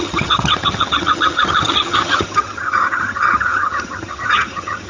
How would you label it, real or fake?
fake